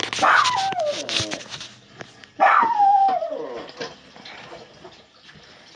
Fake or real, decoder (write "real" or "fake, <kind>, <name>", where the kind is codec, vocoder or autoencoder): real